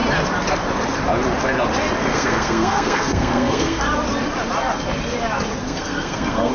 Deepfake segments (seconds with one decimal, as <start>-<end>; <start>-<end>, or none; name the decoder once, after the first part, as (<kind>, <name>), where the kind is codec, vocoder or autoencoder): 2.1-3.8 (codec, SNAC); 5.6-6.5